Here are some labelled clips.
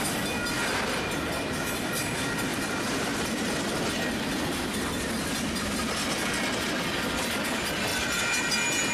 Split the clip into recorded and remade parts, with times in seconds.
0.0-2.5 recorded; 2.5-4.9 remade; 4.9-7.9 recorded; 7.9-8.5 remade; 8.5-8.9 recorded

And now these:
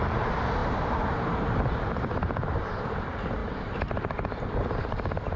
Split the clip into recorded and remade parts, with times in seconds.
0.0-5.4 remade

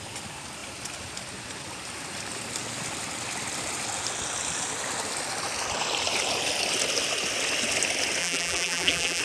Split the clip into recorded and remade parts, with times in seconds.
0.0-8.2 recorded; 8.2-9.2 remade

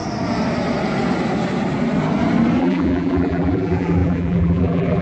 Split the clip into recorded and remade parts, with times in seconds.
0.0-2.6 recorded; 2.6-5.0 remade

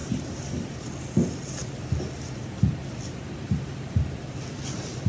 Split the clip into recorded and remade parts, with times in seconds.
0.0-0.6 recorded; 0.6-1.6 remade; 1.6-4.2 recorded; 4.2-5.1 remade

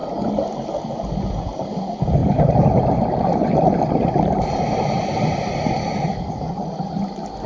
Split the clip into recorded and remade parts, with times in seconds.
0.0-2.2 recorded; 2.2-2.7 remade; 2.7-3.4 recorded; 3.4-4.7 remade; 4.7-7.5 recorded

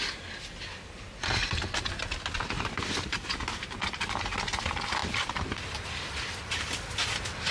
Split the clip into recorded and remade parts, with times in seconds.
0.0-1.4 recorded; 1.4-3.3 remade; 3.3-5.0 recorded; 5.0-6.4 remade; 6.4-7.5 recorded